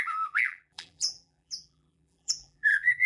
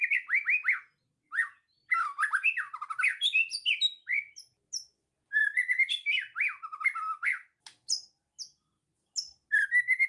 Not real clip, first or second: first